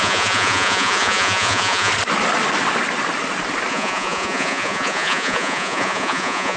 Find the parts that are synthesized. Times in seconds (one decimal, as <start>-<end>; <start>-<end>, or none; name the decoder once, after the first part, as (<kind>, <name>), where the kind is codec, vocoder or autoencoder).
0.0-1.9 (vocoder, Vocos); 3.7-6.6